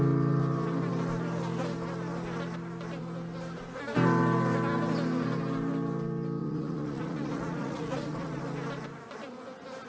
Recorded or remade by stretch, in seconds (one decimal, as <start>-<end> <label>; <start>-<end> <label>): 0.0-6.4 recorded; 6.4-8.4 remade; 8.4-9.9 recorded